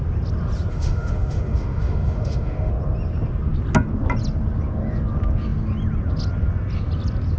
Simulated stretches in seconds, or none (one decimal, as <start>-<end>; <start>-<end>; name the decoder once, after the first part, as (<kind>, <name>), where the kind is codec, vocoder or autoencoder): 0.7-2.7 (autoencoder, DAC-VAE)